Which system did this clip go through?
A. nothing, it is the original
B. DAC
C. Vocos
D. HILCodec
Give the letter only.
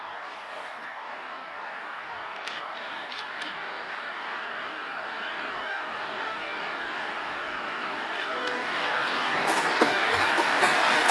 B